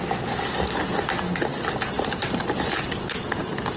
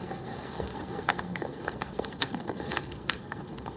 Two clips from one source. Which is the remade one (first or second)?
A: second